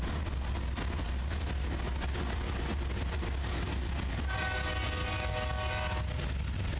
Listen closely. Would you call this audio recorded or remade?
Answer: recorded